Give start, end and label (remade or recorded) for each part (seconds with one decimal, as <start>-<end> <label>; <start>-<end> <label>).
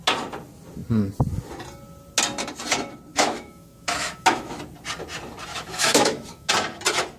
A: 0.0-3.1 recorded; 3.1-4.6 remade; 4.6-5.5 recorded; 5.5-6.5 remade; 6.5-7.2 recorded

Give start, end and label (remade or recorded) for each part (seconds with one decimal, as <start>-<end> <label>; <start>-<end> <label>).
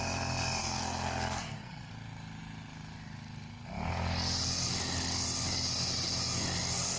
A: 0.0-0.6 recorded; 0.6-1.9 remade; 1.9-7.0 recorded